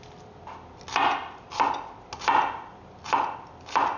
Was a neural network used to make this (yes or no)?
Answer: no